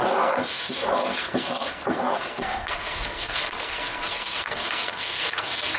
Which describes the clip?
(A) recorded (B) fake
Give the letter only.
B